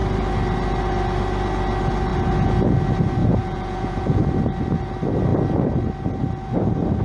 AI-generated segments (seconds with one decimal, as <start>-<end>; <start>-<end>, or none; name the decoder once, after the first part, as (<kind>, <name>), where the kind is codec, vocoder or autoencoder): 3.2-4.2 (vocoder, Vocos)